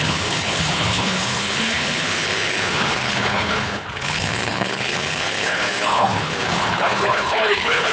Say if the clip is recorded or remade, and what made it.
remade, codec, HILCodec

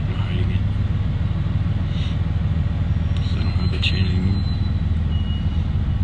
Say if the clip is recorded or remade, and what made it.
recorded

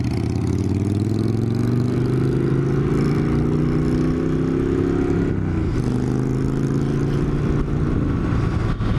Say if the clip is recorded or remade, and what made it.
recorded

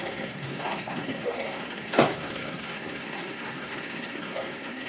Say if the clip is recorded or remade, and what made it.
remade, codec, SNAC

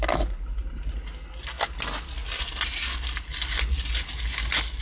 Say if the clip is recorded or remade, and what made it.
recorded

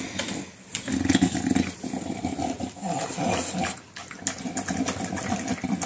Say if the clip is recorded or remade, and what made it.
recorded